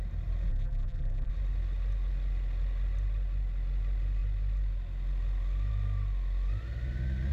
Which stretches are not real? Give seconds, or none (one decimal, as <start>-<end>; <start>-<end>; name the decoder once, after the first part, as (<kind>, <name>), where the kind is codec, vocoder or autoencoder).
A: 0.5-1.3 (vocoder, BigVGAN v2)